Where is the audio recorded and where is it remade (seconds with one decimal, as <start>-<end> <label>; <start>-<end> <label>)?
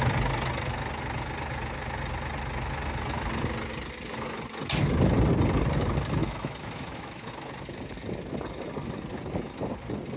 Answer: 0.0-6.2 recorded; 6.2-7.3 remade; 7.3-10.2 recorded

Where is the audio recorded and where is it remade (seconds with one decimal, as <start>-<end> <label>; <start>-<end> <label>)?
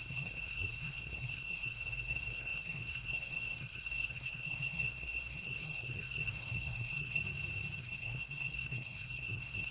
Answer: 0.0-7.2 remade; 7.2-7.8 recorded; 7.8-9.7 remade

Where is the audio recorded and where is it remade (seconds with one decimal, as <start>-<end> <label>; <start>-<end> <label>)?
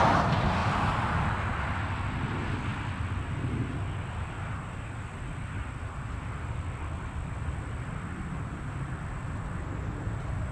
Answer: 0.0-10.5 recorded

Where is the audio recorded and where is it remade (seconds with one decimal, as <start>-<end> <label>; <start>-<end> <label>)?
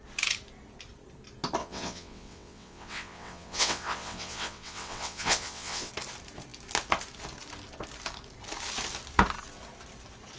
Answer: 0.0-1.6 recorded; 1.6-5.9 remade; 5.9-10.4 recorded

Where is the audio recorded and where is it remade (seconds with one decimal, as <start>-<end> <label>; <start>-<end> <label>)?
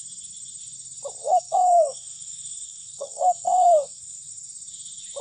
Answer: 0.0-1.2 recorded; 1.2-4.3 remade; 4.3-5.2 recorded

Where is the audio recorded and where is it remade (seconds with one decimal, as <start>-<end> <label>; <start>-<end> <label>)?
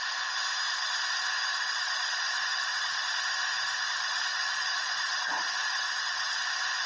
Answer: 0.0-1.5 recorded; 1.5-3.0 remade; 3.0-4.3 recorded; 4.3-6.3 remade; 6.3-6.9 recorded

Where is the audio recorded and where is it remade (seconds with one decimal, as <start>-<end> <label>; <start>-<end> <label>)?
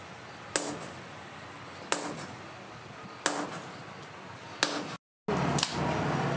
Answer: 0.0-6.4 recorded